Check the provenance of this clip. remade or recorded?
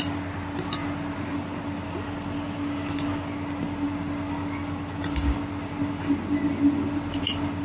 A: recorded